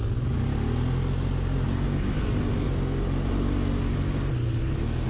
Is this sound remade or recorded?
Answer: recorded